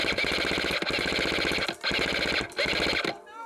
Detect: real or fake real